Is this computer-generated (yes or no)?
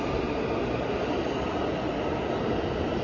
no